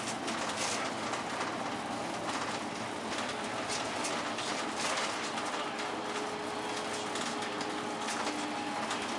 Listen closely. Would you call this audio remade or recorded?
recorded